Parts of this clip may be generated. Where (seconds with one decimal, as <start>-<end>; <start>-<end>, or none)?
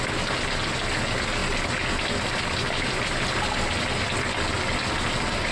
none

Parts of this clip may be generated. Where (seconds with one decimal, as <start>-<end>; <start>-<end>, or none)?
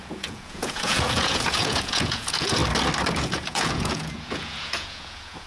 0.0-2.6; 3.1-5.5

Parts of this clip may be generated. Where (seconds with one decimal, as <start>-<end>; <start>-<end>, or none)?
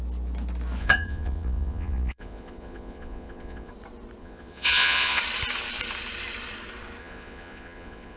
0.8-3.7; 4.2-5.2; 7.0-8.2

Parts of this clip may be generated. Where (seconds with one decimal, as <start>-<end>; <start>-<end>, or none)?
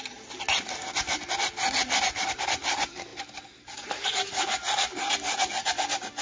none